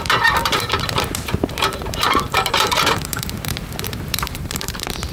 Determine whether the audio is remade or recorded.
remade